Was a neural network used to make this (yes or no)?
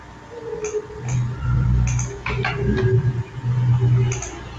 no